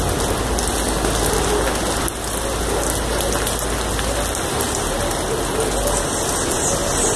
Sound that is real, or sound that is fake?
real